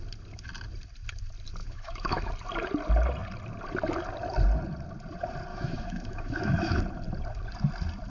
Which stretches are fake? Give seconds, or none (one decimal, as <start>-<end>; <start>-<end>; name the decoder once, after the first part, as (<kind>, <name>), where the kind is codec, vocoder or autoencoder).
1.6-2.3 (autoencoder, DAC-VAE); 5.5-6.8